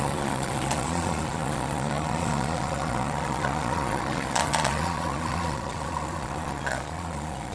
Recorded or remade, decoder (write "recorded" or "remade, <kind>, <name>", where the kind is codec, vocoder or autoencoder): remade, vocoder, Vocos